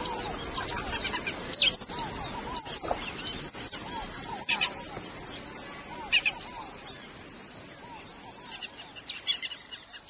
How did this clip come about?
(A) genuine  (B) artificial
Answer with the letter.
A